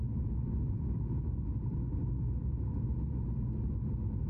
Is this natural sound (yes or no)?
yes